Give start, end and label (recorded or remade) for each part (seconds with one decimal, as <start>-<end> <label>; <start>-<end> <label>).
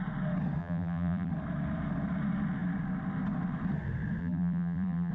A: 0.0-0.6 recorded; 0.6-1.3 remade; 1.3-4.2 recorded; 4.2-5.1 remade